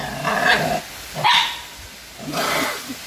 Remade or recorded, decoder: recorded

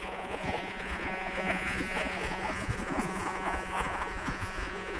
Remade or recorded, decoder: remade, vocoder, Vocos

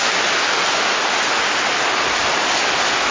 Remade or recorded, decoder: recorded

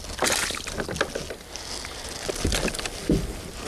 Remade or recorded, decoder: recorded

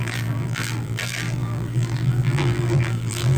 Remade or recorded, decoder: remade, vocoder, BigVGAN v2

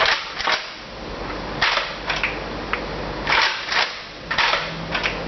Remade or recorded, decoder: recorded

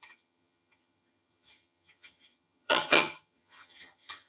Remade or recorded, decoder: remade, vocoder, HiFi-GAN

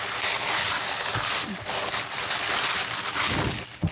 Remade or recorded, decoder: recorded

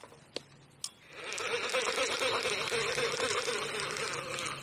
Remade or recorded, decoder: recorded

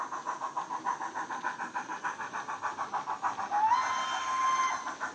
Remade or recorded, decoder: recorded